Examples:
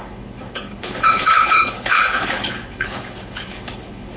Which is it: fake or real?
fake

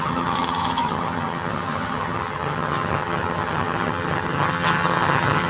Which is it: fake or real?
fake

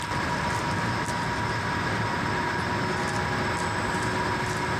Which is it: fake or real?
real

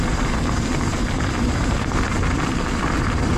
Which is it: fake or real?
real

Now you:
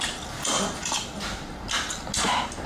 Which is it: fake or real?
real